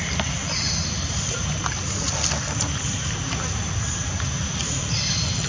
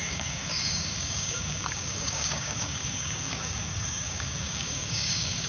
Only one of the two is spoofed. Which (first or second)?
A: second